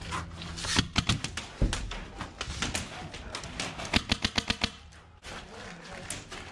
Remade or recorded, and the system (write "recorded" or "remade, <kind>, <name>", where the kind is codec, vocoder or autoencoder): recorded